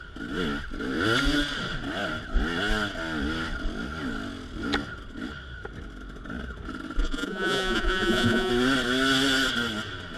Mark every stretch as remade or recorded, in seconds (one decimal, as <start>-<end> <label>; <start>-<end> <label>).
0.0-7.0 recorded; 7.0-8.5 remade; 8.5-10.2 recorded